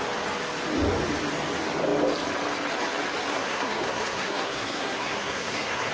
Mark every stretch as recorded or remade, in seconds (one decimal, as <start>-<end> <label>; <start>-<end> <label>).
0.0-3.3 recorded; 3.3-5.9 remade